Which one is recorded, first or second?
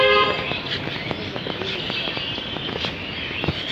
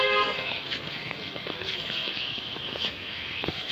first